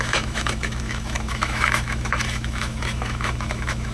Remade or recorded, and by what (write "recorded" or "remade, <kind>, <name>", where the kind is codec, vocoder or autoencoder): remade, autoencoder, DAC-VAE